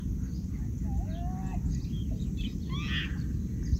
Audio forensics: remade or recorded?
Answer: recorded